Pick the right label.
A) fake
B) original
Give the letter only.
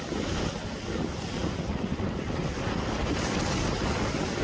B